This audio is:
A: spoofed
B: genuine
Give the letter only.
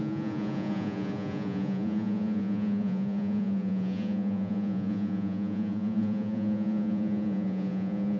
A